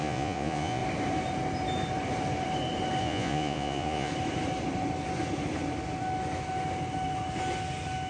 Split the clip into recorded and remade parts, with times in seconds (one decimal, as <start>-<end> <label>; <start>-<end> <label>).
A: 0.0-0.8 remade; 0.8-3.0 recorded; 3.0-4.1 remade; 4.1-8.1 recorded

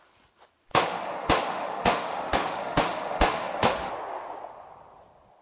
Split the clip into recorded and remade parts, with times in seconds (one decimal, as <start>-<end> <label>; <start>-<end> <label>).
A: 0.0-0.7 recorded; 0.7-3.9 remade; 3.9-5.4 recorded

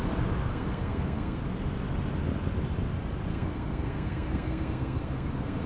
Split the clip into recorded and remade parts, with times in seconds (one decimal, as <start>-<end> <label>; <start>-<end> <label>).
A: 0.0-0.5 recorded; 0.5-1.4 remade; 1.4-3.3 recorded; 3.3-5.7 remade

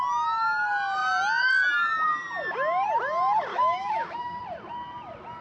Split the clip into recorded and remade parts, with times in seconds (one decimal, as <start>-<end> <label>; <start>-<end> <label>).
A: 0.0-3.5 recorded; 3.5-4.4 remade; 4.4-5.4 recorded